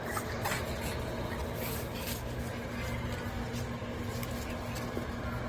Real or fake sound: real